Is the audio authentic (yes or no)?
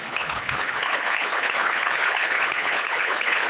no